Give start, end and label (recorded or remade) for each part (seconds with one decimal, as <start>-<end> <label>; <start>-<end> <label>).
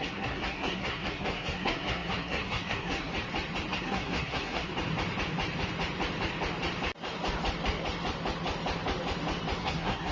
0.0-3.1 remade; 3.1-3.7 recorded; 3.7-4.7 remade; 4.7-9.6 recorded; 9.6-10.1 remade